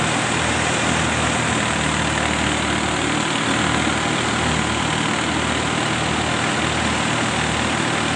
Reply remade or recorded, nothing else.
recorded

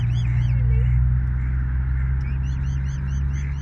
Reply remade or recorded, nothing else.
recorded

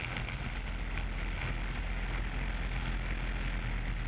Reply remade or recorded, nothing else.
recorded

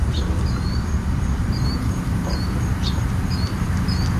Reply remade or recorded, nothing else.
remade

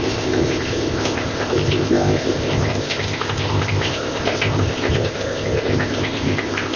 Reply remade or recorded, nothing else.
remade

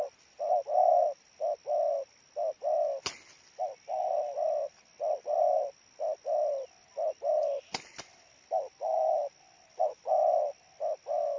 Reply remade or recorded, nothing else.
recorded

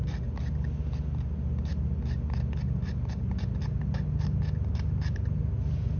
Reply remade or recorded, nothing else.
recorded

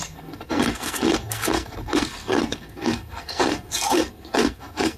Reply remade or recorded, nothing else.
remade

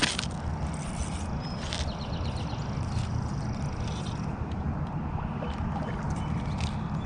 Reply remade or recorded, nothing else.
recorded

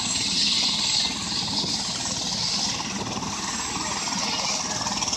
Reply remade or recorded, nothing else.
recorded